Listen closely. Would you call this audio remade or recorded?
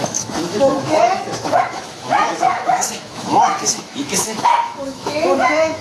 remade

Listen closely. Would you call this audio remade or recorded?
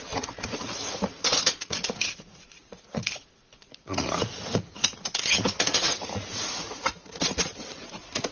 remade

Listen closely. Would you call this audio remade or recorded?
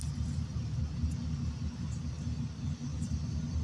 recorded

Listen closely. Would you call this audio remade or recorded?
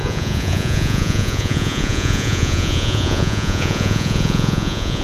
remade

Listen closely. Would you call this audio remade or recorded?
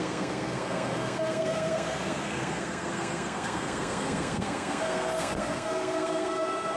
remade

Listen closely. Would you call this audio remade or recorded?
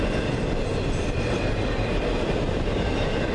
recorded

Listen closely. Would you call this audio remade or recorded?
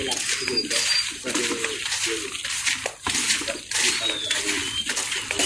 recorded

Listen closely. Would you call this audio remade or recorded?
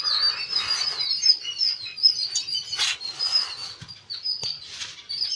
recorded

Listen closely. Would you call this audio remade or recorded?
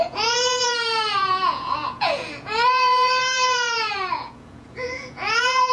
remade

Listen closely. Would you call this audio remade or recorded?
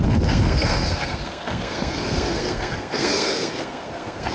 remade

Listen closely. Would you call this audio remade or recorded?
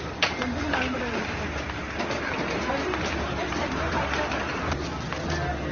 recorded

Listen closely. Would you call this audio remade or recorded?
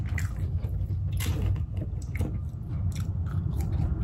recorded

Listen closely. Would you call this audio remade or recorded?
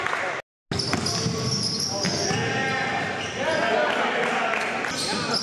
recorded